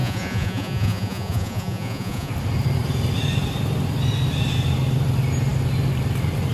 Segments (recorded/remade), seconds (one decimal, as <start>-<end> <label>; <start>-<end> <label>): 0.0-2.3 remade; 2.3-6.5 recorded